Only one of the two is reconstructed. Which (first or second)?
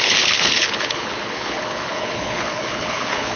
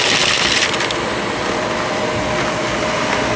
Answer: first